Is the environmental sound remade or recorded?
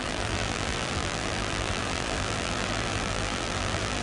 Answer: remade